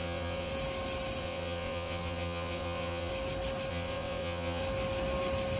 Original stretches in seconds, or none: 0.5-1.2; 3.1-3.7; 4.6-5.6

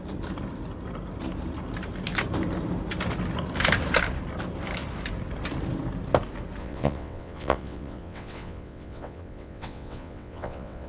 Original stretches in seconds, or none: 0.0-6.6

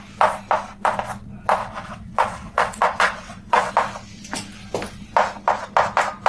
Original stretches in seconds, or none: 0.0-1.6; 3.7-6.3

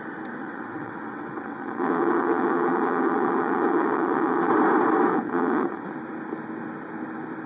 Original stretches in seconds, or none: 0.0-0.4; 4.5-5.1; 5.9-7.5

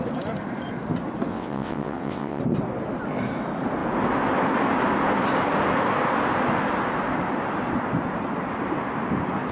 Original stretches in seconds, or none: 0.0-1.3; 2.4-9.5

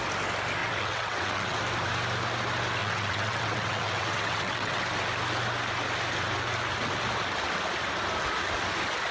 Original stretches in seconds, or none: 0.0-0.6; 1.6-2.8; 4.8-9.1